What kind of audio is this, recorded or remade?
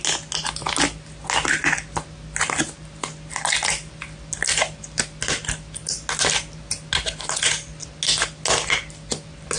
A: recorded